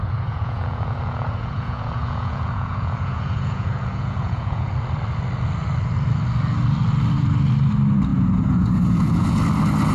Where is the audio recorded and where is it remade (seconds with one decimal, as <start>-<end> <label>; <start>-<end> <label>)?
0.0-4.7 remade; 4.7-8.1 recorded; 8.1-9.4 remade; 9.4-9.9 recorded